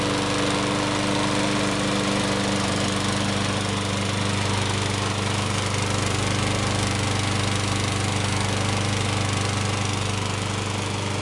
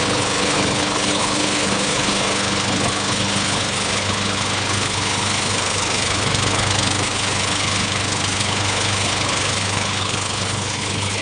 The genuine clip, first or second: first